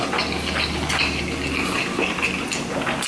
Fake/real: real